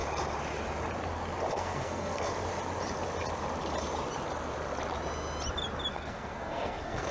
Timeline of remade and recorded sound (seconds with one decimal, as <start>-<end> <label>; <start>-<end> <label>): 0.0-1.5 recorded; 1.5-2.3 remade; 2.3-5.9 recorded; 5.9-7.1 remade